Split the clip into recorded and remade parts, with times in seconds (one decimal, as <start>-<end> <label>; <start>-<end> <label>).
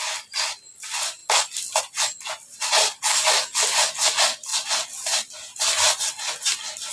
0.0-6.9 recorded